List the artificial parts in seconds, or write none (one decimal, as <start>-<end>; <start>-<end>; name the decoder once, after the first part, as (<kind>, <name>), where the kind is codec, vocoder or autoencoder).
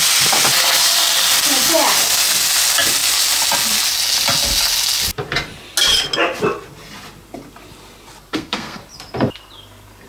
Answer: 8.3-8.8 (codec, SNAC)